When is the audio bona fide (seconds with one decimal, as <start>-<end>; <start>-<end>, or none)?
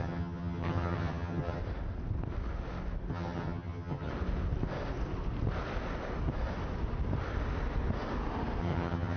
1.6-3.1; 4.1-8.6